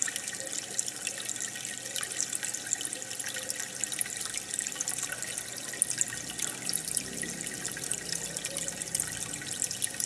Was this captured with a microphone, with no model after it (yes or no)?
yes